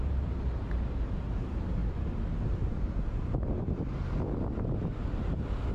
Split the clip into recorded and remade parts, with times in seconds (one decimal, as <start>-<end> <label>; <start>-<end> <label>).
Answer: 0.0-5.7 recorded